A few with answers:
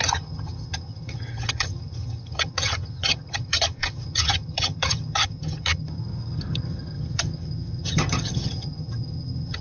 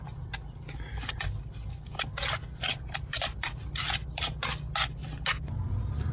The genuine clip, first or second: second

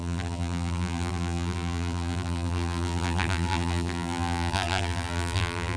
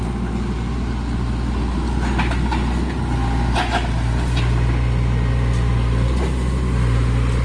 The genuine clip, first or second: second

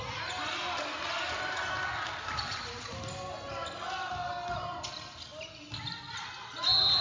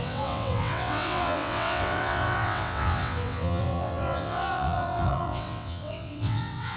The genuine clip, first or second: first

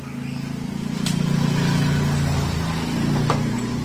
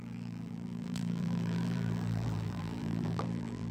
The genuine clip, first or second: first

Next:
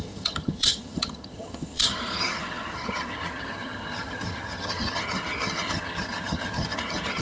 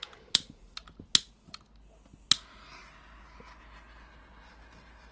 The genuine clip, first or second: second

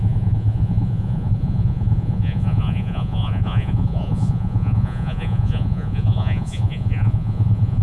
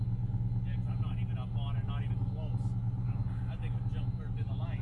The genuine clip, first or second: second